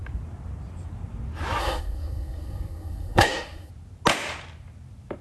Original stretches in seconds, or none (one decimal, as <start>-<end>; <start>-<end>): 0.0-1.6; 3.7-5.2